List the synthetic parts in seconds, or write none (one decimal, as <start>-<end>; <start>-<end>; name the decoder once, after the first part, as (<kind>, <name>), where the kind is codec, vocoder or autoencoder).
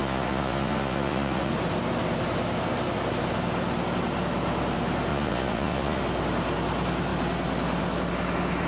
0.0-1.5 (vocoder, Vocos); 5.1-6.0